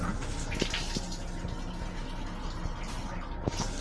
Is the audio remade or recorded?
recorded